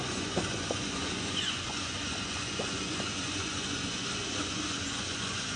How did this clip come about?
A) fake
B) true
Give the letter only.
A